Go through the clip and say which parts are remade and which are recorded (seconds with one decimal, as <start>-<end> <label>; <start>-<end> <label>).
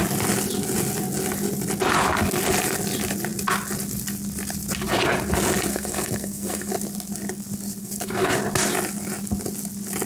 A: 0.0-5.7 recorded; 5.7-6.7 remade; 6.7-7.8 recorded; 7.8-8.3 remade; 8.3-10.1 recorded